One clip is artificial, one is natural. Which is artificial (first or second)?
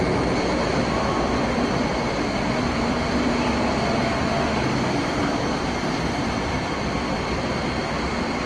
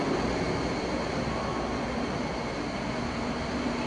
first